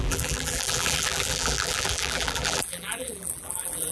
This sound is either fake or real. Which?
fake